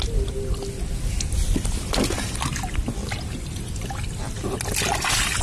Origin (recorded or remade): recorded